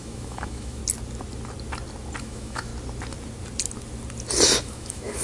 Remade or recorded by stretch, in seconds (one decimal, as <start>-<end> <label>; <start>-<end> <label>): 0.0-0.8 remade; 0.8-2.2 recorded; 2.2-2.7 remade; 2.7-4.6 recorded; 4.6-5.2 remade